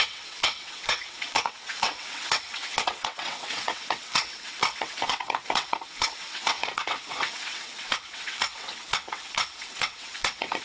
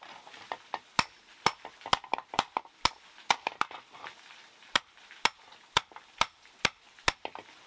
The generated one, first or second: first